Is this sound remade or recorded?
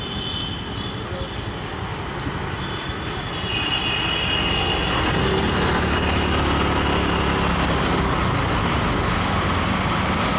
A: recorded